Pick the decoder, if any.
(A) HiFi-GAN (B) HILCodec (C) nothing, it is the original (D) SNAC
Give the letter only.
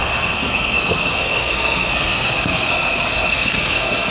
D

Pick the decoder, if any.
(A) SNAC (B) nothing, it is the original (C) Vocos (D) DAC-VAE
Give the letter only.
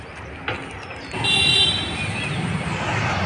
B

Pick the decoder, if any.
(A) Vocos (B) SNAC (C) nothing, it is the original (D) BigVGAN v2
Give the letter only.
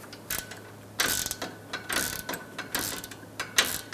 C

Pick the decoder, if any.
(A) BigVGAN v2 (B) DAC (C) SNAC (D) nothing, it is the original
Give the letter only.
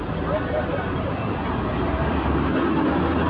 D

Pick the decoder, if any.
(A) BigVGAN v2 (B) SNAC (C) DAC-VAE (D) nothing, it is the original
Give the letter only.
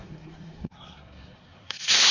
B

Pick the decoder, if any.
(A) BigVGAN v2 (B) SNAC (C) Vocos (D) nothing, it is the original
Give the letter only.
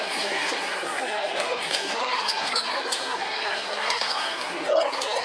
B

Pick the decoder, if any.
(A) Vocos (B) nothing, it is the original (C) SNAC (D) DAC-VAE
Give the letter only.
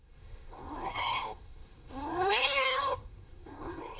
C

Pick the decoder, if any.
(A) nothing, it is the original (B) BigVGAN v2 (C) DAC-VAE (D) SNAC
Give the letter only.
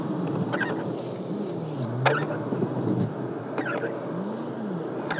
A